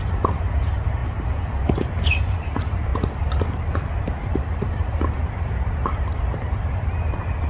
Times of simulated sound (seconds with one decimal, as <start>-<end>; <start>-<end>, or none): 0.0-2.9; 4.2-7.5